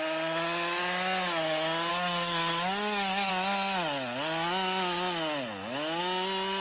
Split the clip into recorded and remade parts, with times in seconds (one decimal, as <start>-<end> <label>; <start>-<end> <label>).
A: 0.0-1.9 recorded; 1.9-3.3 remade; 3.3-6.6 recorded